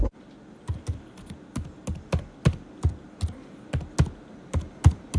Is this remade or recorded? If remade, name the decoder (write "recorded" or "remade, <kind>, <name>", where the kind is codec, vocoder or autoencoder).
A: recorded